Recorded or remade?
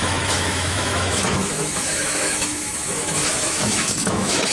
remade